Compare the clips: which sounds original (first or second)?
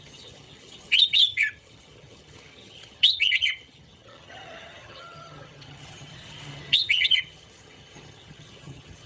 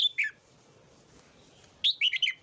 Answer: second